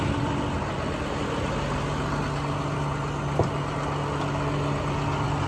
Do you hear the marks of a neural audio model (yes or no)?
no